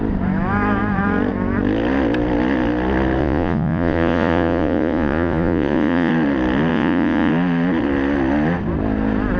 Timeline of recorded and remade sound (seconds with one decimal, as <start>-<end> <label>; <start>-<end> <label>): 0.0-3.2 recorded; 3.2-6.1 remade; 6.1-6.7 recorded; 6.7-7.3 remade; 7.3-9.4 recorded